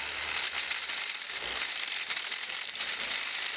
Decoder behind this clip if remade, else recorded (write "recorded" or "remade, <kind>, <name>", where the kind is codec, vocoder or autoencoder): recorded